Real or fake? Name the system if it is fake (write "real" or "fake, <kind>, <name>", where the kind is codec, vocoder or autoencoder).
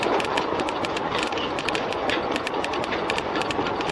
fake, vocoder, Vocos